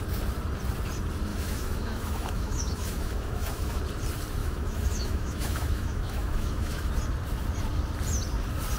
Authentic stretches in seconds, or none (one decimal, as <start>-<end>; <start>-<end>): 0.0-1.3; 3.8-4.4; 6.9-8.8